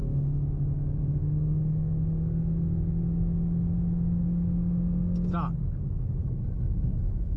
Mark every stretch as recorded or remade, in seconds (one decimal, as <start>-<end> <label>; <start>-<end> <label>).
0.0-6.2 recorded; 6.2-7.4 remade